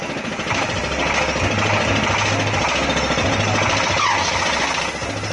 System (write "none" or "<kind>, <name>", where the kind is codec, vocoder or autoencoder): none